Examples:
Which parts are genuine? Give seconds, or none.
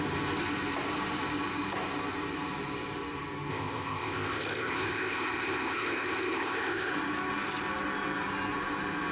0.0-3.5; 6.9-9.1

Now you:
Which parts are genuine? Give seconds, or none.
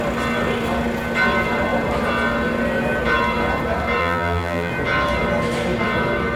0.0-4.0; 4.7-6.4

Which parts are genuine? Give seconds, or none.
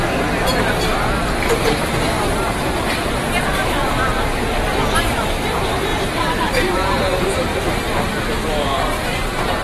none